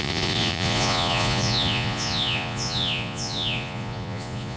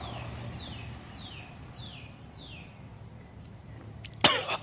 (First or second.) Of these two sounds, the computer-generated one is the first